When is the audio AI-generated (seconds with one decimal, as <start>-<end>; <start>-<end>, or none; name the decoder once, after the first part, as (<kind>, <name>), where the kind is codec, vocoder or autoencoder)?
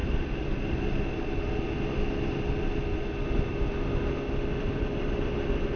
4.5-5.8 (vocoder, BigVGAN v2)